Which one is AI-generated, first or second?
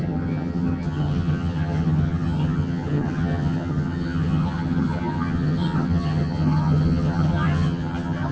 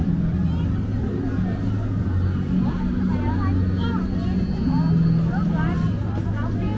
first